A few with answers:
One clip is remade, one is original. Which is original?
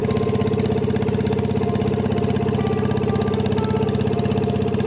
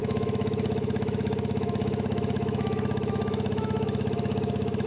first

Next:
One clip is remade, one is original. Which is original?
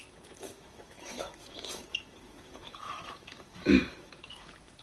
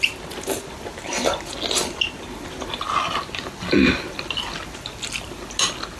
second